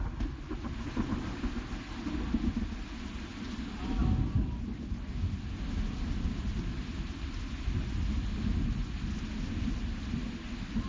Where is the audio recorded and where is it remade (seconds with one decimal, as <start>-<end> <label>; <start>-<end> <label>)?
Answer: 0.0-10.9 recorded